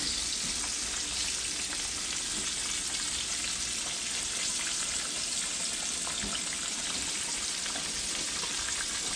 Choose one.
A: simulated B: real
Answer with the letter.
B